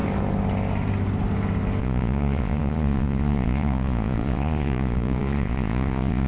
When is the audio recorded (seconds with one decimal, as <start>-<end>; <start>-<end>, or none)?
0.0-1.8